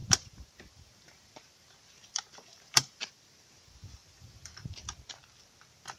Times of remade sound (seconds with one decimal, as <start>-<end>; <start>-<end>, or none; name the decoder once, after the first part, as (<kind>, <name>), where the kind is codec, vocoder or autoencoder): 0.0-3.1 (vocoder, BigVGAN v2); 4.0-4.7